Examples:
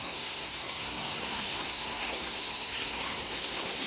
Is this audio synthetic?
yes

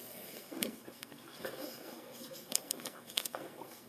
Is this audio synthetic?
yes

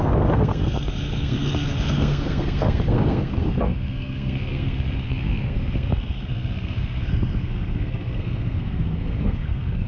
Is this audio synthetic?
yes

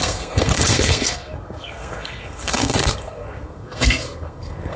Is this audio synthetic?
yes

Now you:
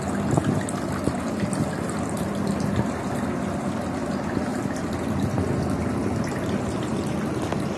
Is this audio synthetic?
no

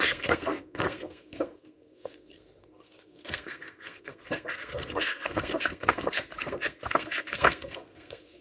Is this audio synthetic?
yes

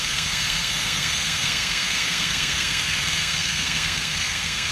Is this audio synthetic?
yes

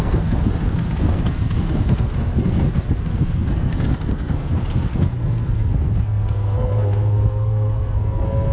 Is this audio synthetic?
yes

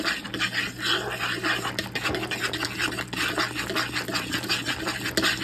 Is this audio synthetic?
no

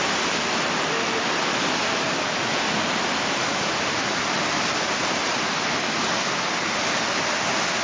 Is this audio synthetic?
no